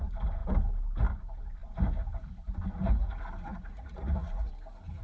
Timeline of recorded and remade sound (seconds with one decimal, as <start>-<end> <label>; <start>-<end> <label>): 0.0-3.5 recorded; 3.5-4.5 remade; 4.5-5.0 recorded